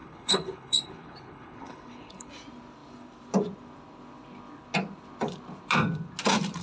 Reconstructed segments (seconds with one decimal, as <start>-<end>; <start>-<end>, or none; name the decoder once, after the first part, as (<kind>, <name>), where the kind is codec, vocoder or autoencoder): 0.0-2.3 (codec, HILCodec)